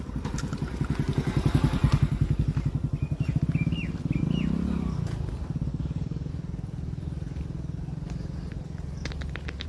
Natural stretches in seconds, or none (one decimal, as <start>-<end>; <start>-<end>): 0.0-5.7; 6.3-9.7